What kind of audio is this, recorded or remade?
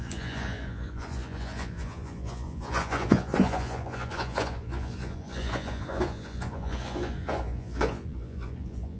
remade